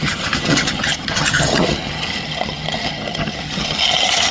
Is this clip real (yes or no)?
no